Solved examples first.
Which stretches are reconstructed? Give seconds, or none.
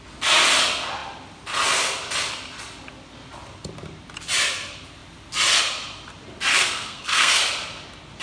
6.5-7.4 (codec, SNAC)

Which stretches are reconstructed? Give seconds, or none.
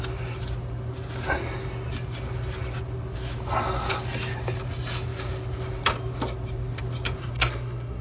7.2-8.0 (codec, SNAC)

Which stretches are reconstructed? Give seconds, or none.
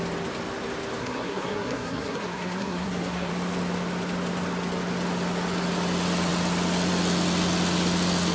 1.0-3.3 (codec, SNAC)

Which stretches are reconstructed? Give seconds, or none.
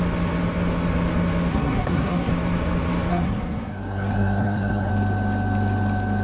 1.5-2.3 (codec, SNAC); 3.1-4.9